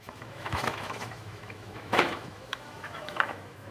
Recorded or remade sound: remade